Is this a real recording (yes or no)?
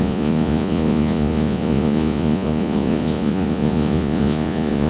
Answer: no